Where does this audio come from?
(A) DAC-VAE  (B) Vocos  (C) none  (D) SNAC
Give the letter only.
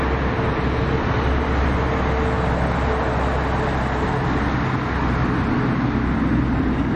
C